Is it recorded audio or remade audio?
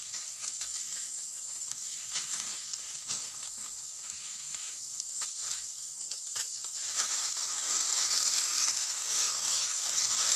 remade